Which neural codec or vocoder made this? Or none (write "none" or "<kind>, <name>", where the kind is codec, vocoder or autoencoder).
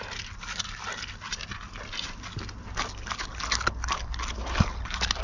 none